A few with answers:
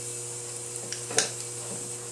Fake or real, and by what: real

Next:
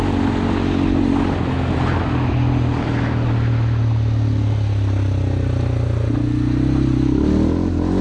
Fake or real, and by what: real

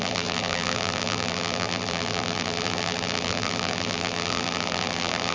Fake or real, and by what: fake, vocoder, BigVGAN v2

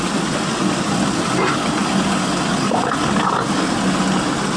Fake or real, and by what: real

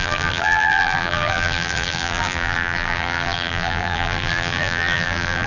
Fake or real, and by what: fake, vocoder, BigVGAN v2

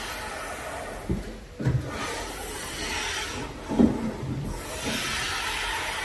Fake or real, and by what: real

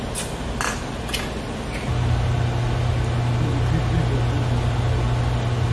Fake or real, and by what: real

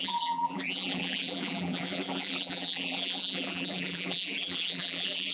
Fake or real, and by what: fake, vocoder, BigVGAN v2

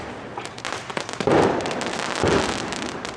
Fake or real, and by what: real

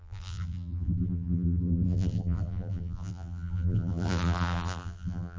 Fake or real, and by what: fake, vocoder, BigVGAN v2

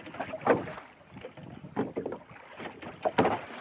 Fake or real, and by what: real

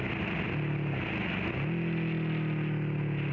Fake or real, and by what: real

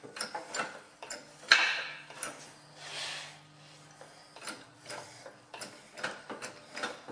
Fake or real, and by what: fake, vocoder, BigVGAN v2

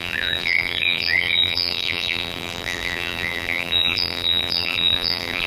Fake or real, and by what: fake, vocoder, BigVGAN v2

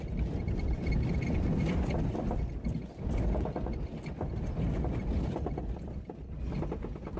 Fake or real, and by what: real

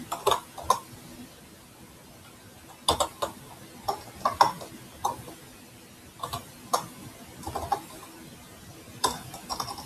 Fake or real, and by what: real